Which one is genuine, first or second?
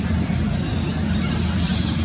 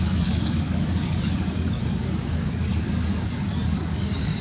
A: first